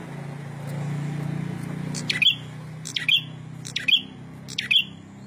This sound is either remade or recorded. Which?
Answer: recorded